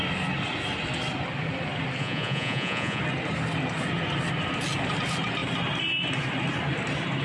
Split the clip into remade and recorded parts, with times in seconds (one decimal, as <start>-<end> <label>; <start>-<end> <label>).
0.0-2.0 recorded; 2.0-3.0 remade; 3.0-7.2 recorded